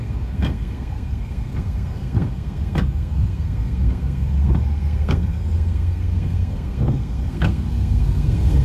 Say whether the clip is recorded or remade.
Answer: remade